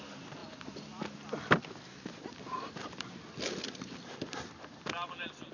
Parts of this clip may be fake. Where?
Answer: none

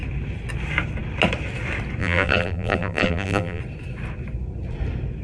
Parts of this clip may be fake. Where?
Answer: 2.0-3.6 (vocoder, BigVGAN v2)

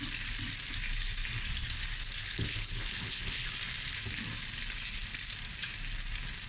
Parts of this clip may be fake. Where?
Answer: 2.2-3.5 (codec, HILCodec)